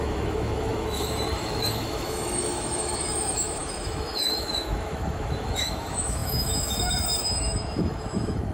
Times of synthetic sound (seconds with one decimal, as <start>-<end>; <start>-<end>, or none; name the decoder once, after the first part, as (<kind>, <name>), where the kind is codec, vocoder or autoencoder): 0.0-8.5 (autoencoder, DAC-VAE)